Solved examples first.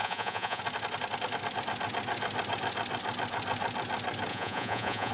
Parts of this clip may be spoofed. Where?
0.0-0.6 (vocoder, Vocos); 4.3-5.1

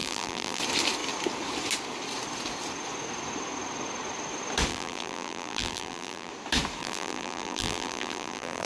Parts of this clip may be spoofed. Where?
0.0-0.6 (vocoder, BigVGAN v2); 4.7-6.3; 6.8-8.7

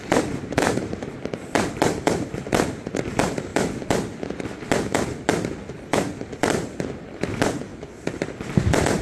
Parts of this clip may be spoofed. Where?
0.0-3.5 (vocoder, BigVGAN v2); 4.4-5.6; 6.4-7.7; 8.3-9.0

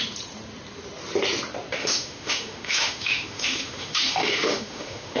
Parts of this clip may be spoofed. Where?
1.8-5.2 (autoencoder, DAC-VAE)

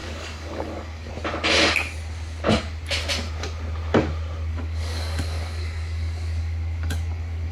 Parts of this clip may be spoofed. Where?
0.0-1.1 (codec, DAC); 4.5-7.5

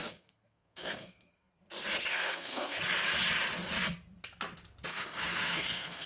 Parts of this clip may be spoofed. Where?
0.0-1.5 (codec, SNAC); 2.1-2.8; 4.9-6.1